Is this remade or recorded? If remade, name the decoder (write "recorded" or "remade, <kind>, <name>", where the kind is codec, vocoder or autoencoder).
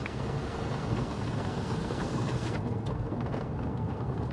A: remade, codec, SNAC